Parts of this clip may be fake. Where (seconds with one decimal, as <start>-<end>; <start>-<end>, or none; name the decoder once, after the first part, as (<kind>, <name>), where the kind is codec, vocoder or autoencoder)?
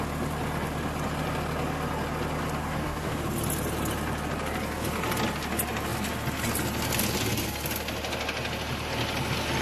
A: 2.6-3.2 (codec, DAC)